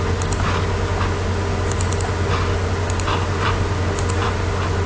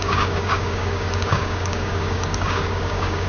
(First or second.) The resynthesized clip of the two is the second